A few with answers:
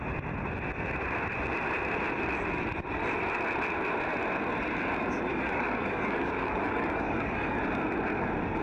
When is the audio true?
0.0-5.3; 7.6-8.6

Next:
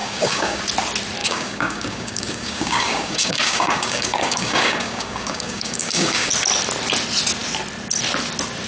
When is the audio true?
0.6-1.2; 6.3-8.7

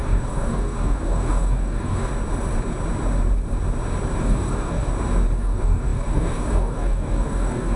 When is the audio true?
2.1-4.2; 4.9-5.4

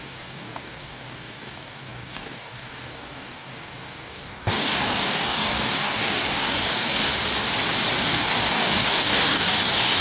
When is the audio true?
7.1-8.0

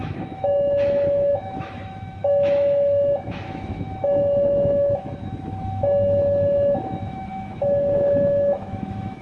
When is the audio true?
none

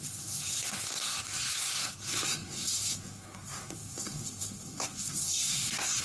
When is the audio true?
none